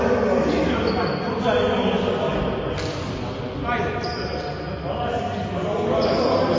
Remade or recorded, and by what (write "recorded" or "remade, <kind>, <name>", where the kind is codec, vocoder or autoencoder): recorded